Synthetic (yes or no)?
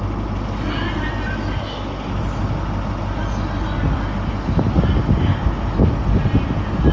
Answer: no